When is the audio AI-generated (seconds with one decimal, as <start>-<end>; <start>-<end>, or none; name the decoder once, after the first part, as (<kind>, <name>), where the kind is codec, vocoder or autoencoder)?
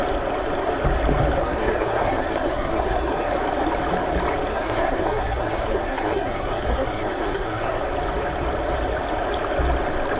1.4-3.3 (codec, SNAC); 4.5-7.8